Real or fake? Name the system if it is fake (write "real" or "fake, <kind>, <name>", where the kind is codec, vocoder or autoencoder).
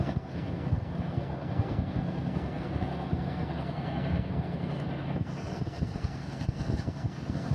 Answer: fake, codec, SNAC